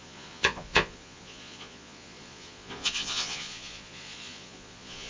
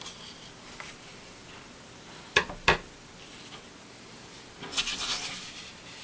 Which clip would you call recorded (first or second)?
second